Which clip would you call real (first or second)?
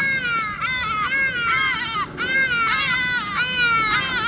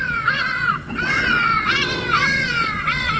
first